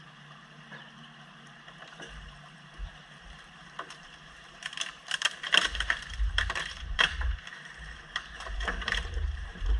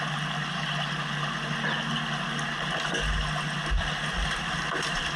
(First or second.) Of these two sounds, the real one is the second